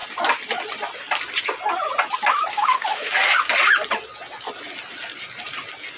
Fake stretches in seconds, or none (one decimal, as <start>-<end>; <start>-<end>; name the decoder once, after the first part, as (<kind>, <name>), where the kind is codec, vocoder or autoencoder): 2.5-3.1 (autoencoder, DAC-VAE)